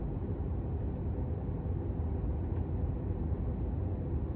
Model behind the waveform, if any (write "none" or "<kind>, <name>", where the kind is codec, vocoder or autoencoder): none